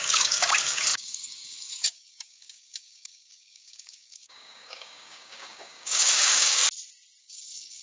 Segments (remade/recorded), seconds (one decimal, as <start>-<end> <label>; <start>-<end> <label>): 0.0-6.6 remade; 6.6-7.2 recorded; 7.2-7.8 remade